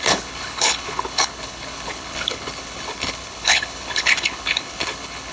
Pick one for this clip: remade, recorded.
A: remade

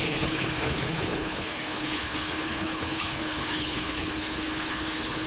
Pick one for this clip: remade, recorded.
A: remade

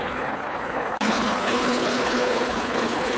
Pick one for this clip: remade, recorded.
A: remade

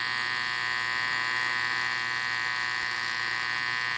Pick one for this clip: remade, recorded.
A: recorded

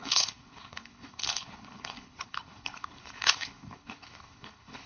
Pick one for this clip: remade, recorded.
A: remade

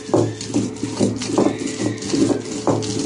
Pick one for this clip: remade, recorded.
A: recorded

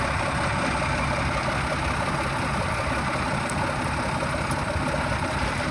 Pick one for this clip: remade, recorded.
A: recorded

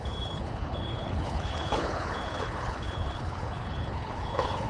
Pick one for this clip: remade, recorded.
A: remade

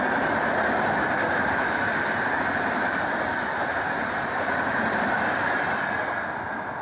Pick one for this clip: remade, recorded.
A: recorded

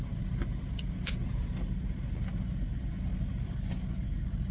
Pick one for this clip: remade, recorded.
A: recorded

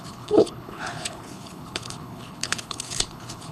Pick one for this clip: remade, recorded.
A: remade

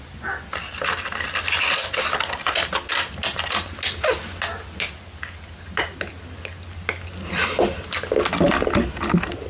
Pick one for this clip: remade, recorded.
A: recorded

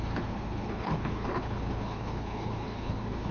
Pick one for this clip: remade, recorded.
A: remade